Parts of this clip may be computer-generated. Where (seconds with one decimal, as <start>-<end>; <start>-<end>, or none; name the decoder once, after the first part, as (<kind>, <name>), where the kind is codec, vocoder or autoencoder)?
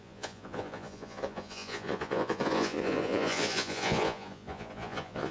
0.0-5.3 (vocoder, Vocos)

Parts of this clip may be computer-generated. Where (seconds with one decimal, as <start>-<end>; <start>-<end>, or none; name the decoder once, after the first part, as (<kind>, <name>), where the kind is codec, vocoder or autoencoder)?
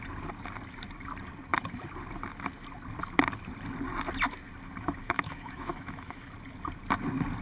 5.0-6.3 (autoencoder, DAC-VAE)